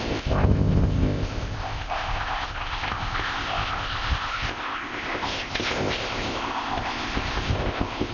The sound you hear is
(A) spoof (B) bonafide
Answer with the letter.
A